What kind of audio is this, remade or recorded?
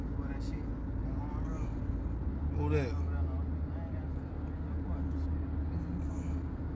recorded